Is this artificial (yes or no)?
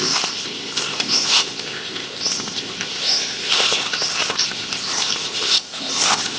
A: yes